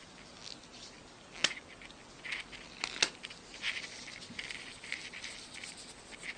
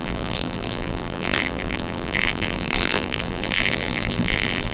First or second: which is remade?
second